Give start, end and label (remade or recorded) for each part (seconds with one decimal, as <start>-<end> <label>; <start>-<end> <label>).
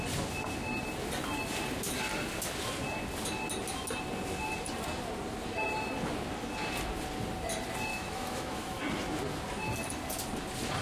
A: 0.0-7.9 recorded; 7.9-8.8 remade; 8.8-10.8 recorded